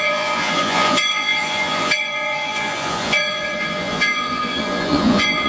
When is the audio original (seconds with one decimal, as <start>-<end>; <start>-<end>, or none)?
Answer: none